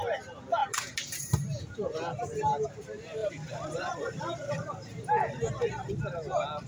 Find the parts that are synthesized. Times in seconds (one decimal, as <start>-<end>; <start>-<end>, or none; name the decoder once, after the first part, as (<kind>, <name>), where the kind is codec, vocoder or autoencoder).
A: 0.6-2.8 (vocoder, BigVGAN v2); 3.2-5.9